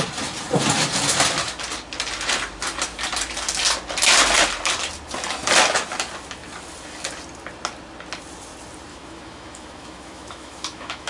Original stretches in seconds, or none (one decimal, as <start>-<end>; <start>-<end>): 0.0-8.9